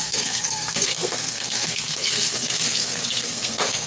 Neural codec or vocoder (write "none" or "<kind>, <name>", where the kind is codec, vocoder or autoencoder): codec, SNAC